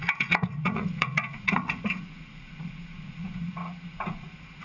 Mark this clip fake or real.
fake